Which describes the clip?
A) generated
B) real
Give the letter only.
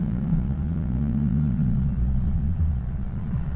A